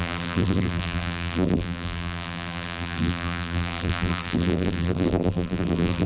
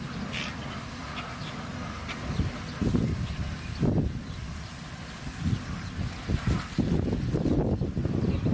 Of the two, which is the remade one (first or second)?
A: first